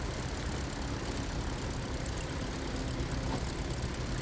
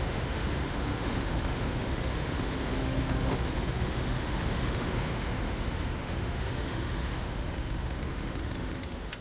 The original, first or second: first